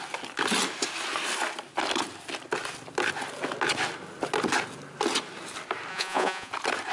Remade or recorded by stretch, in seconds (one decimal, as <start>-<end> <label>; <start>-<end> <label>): 0.0-5.9 recorded; 5.9-6.5 remade; 6.5-6.9 recorded